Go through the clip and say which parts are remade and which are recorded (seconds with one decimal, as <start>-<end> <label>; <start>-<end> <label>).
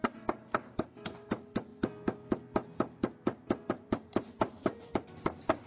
0.0-1.7 remade; 1.7-3.7 recorded; 3.7-5.7 remade